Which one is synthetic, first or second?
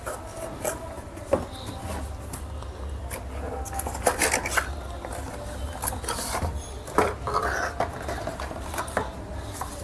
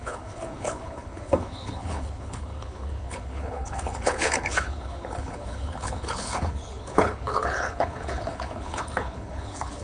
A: second